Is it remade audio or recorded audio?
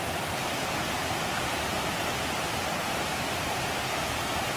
recorded